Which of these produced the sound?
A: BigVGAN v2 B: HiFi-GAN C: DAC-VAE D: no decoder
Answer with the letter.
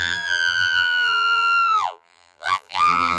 A